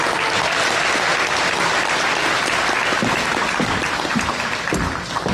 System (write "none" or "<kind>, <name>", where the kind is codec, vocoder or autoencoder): none